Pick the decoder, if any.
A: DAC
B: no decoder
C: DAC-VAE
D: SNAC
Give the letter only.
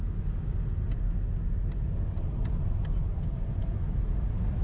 B